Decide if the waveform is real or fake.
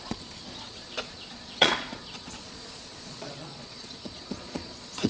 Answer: fake